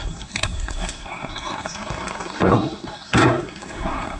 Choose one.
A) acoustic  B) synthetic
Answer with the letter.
B